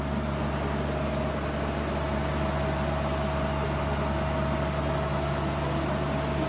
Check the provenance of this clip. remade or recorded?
recorded